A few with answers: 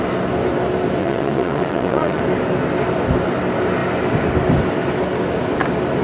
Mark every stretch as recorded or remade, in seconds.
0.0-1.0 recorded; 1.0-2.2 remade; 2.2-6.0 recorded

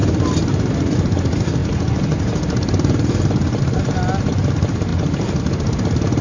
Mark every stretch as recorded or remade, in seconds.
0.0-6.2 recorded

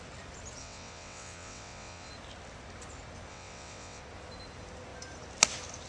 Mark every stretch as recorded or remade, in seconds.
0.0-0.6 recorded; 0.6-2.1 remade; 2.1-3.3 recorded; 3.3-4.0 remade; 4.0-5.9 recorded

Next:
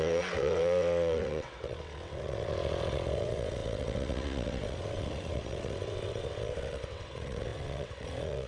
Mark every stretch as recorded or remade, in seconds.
0.0-8.5 remade

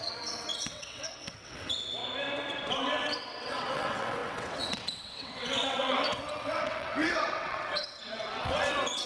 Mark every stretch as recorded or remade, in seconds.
0.0-2.0 remade; 2.0-2.7 recorded; 2.7-9.1 remade